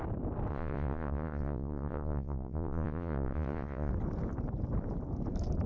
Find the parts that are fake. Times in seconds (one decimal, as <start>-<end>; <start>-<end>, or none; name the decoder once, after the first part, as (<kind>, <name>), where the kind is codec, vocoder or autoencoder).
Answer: 0.5-3.9 (vocoder, Vocos)